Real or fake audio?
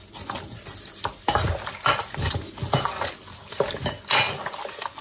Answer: real